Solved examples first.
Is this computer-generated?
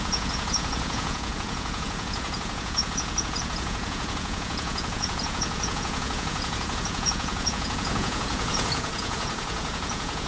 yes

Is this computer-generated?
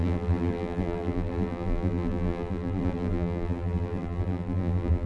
yes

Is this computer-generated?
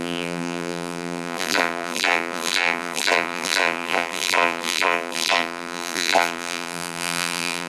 yes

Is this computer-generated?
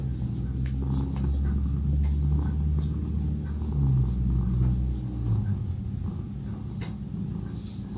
no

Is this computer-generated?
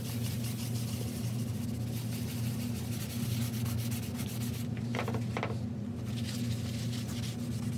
no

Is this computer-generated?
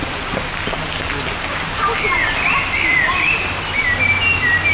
no